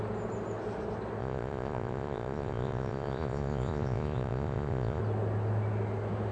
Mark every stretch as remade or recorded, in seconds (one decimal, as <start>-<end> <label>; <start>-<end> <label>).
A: 0.0-1.2 recorded; 1.2-5.0 remade; 5.0-6.3 recorded